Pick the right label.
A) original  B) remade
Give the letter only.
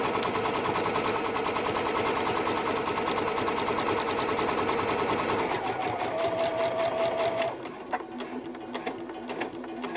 A